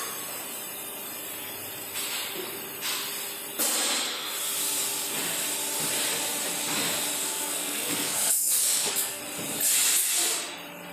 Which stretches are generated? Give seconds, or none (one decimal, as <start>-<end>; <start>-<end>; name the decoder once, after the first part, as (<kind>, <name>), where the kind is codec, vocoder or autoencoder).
7.2-9.2 (codec, SNAC)

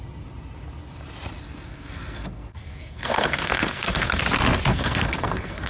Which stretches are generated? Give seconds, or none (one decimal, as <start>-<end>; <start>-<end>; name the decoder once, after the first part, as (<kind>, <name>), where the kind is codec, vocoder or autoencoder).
1.4-4.2 (codec, SNAC); 4.7-5.7

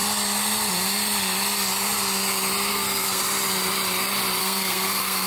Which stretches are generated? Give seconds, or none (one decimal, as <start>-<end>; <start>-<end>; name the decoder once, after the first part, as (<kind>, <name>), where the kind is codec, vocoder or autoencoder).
2.7-3.2 (codec, SNAC); 4.4-5.3

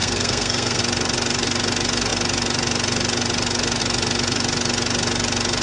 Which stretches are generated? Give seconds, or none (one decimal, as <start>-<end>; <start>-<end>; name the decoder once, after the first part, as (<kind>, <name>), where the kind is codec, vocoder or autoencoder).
0.0-0.8 (codec, SNAC)